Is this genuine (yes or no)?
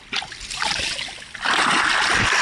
yes